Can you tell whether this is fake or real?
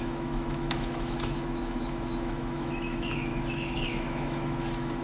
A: fake